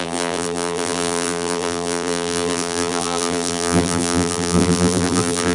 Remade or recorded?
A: remade